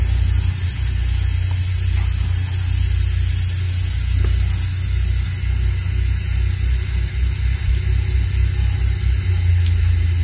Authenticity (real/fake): real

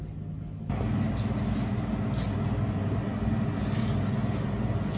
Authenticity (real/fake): real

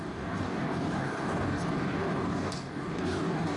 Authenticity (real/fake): fake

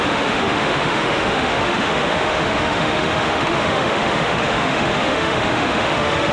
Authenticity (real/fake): fake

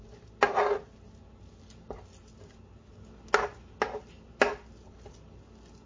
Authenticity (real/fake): real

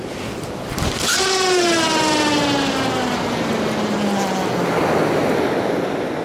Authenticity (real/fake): real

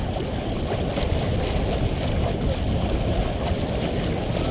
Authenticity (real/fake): real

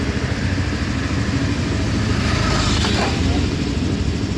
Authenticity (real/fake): real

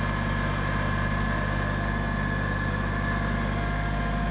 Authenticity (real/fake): real